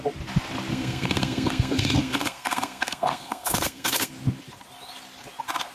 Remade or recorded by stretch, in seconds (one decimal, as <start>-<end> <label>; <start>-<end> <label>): 0.0-0.7 recorded; 0.7-4.1 remade; 4.1-5.7 recorded